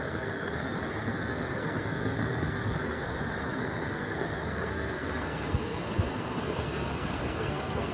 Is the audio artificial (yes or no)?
yes